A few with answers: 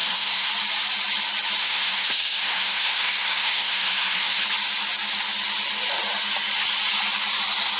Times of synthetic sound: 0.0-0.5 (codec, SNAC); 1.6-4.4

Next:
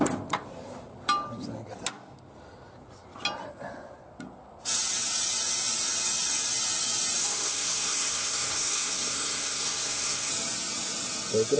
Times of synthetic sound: 7.2-10.3 (codec, SNAC)

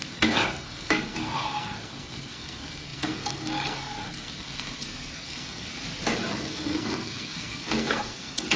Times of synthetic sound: 0.0-5.7 (codec, SNAC); 6.3-8.6

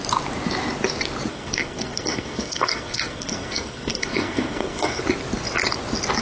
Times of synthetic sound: 1.3-5.0 (codec, SNAC)

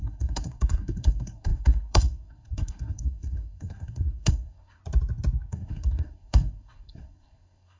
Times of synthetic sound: 0.0-4.8 (codec, SNAC); 5.5-7.8

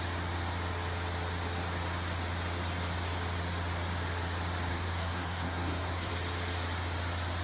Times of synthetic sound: 4.7-6.1 (codec, SNAC)